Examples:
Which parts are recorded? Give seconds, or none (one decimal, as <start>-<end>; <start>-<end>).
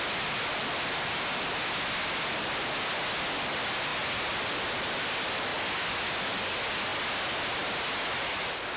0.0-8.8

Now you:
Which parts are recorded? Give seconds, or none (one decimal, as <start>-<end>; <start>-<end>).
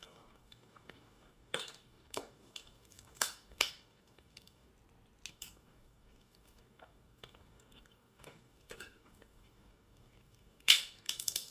4.7-5.3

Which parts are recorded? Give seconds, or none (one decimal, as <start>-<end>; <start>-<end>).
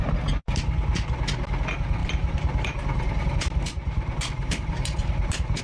0.0-2.0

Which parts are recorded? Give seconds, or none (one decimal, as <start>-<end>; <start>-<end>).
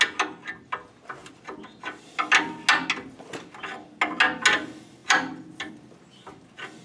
0.0-6.8